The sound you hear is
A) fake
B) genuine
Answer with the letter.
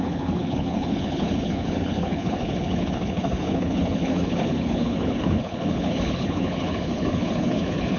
A